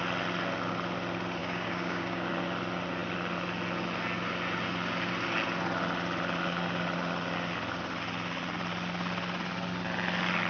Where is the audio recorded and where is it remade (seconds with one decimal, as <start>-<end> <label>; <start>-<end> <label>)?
0.0-1.4 recorded; 1.4-2.3 remade; 2.3-10.5 recorded